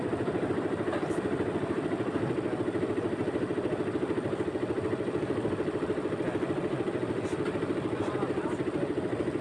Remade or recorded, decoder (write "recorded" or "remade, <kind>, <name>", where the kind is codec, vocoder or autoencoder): remade, vocoder, BigVGAN v2